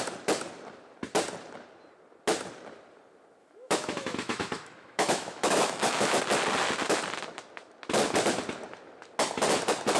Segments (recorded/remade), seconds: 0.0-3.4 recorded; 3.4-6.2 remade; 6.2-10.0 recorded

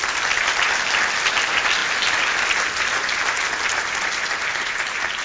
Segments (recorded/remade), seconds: 0.0-5.2 recorded

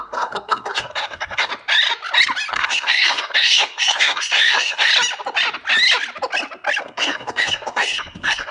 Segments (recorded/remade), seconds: 0.0-1.5 remade; 1.5-2.5 recorded; 2.5-4.9 remade; 4.9-6.8 recorded; 6.8-8.5 remade

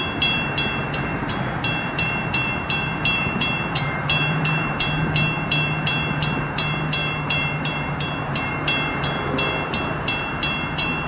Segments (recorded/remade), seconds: 0.0-11.1 remade